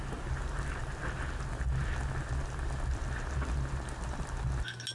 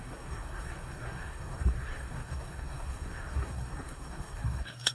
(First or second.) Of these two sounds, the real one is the first